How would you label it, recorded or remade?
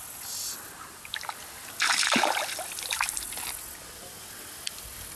recorded